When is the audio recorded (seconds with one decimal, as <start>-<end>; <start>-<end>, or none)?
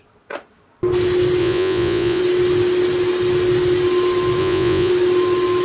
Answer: 0.0-1.4; 2.2-4.4; 4.9-5.6